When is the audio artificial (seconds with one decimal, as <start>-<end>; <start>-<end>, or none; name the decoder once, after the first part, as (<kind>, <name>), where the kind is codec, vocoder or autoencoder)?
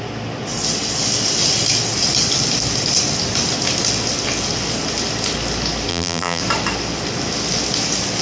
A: 5.9-6.4 (vocoder, BigVGAN v2)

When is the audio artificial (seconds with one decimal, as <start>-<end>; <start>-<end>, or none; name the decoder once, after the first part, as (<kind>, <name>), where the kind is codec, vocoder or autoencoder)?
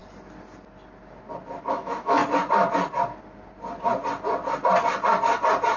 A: 1.7-2.2 (autoencoder, DAC-VAE)